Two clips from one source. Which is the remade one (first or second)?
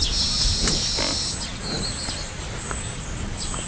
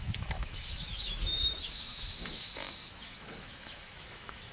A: second